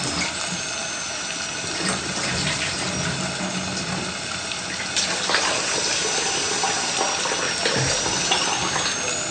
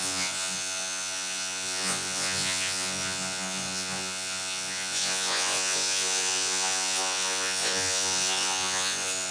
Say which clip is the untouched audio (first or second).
first